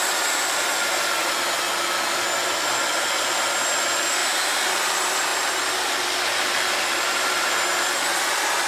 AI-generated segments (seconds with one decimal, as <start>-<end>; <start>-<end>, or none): 4.2-4.7